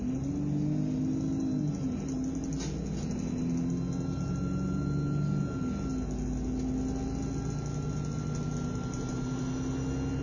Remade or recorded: recorded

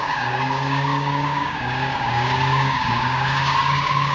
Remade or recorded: remade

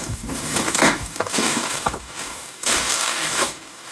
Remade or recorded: remade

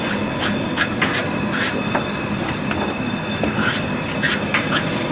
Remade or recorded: recorded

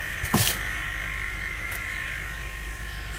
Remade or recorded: remade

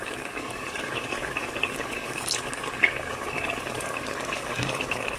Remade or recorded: remade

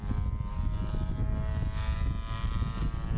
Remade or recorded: recorded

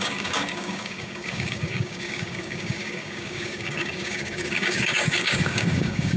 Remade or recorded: remade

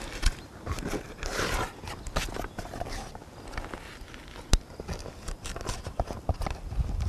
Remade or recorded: recorded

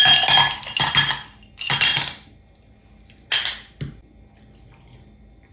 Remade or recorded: recorded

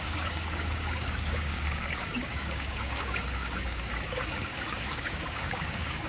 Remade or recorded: remade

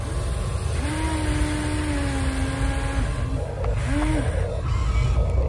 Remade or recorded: recorded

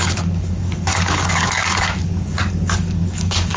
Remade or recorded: remade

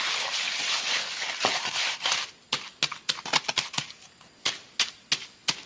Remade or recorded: recorded